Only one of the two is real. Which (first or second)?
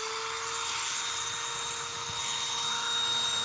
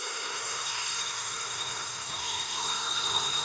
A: first